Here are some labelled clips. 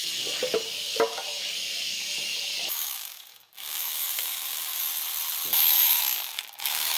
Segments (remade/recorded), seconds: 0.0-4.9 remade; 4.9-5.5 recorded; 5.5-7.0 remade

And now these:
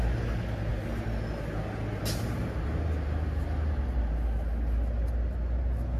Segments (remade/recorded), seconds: 0.0-6.0 recorded

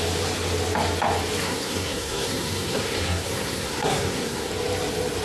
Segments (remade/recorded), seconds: 0.0-1.4 recorded; 1.4-4.5 remade; 4.5-5.2 recorded

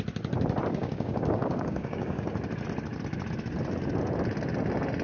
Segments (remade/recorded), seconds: 0.0-0.8 recorded; 0.8-2.3 remade; 2.3-5.0 recorded